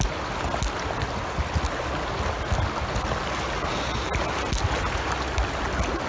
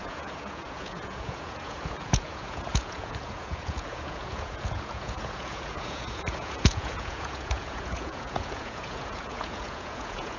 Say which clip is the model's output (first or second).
second